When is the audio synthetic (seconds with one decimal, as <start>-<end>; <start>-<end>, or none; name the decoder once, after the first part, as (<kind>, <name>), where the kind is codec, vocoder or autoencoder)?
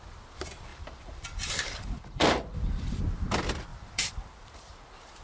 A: 0.7-3.0 (vocoder, BigVGAN v2); 3.7-4.7